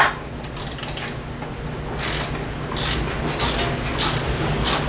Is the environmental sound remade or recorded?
recorded